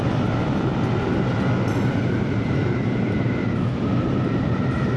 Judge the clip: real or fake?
fake